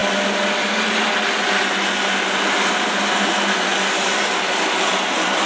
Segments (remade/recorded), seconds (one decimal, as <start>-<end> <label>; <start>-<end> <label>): 0.0-3.3 recorded; 3.3-5.5 remade